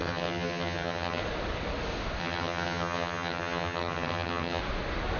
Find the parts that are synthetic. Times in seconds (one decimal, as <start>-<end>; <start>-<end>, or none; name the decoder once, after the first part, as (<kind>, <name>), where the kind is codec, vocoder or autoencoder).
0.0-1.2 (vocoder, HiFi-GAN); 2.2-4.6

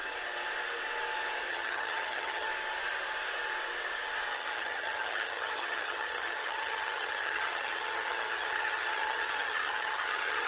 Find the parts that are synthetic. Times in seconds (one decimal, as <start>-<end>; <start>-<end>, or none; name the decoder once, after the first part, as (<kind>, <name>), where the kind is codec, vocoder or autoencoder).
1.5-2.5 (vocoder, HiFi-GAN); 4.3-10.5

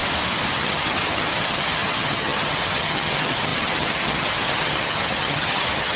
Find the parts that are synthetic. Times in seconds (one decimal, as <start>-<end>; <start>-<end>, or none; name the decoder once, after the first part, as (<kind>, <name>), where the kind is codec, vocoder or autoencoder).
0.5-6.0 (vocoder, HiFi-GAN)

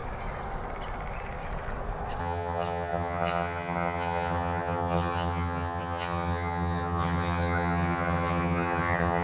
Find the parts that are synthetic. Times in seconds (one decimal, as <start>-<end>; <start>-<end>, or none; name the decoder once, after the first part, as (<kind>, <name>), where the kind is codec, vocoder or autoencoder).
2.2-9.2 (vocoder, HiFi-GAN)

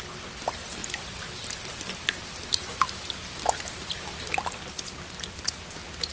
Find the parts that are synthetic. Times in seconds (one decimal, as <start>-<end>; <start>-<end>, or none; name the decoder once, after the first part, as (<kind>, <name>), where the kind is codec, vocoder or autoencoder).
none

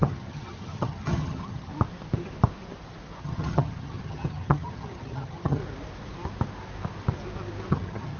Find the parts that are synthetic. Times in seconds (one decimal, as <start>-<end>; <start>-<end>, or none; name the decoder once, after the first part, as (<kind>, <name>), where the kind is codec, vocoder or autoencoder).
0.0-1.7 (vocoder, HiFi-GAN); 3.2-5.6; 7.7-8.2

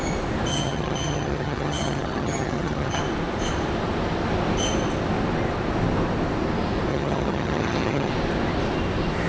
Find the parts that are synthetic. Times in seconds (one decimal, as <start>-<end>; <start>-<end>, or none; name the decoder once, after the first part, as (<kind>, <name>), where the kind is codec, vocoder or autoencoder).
0.5-3.0 (vocoder, HiFi-GAN); 6.9-8.1